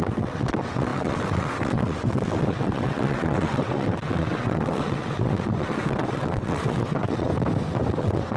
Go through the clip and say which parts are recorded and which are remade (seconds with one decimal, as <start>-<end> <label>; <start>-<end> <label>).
0.0-7.3 remade; 7.3-8.0 recorded; 8.0-8.4 remade